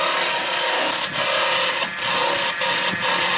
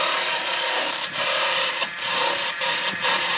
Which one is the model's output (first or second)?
second